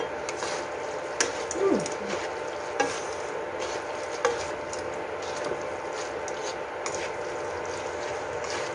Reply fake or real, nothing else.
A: real